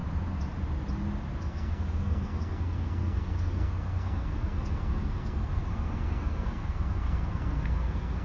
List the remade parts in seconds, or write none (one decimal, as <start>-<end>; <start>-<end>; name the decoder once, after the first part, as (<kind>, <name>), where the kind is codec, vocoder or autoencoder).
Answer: 1.4-8.2 (codec, SNAC)